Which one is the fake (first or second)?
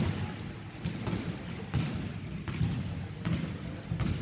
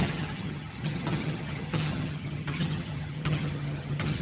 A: second